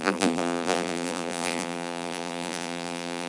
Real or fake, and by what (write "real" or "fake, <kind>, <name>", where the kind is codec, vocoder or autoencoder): fake, vocoder, BigVGAN v2